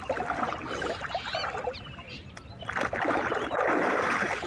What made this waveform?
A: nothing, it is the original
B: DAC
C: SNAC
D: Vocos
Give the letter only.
A